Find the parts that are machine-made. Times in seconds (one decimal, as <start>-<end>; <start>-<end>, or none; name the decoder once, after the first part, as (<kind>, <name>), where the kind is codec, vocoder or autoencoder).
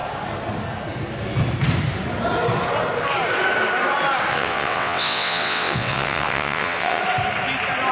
4.3-7.0 (vocoder, WaveNeXt)